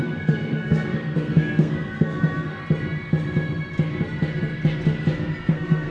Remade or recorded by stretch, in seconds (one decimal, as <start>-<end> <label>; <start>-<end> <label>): 0.0-2.6 remade; 2.6-5.5 recorded; 5.5-5.9 remade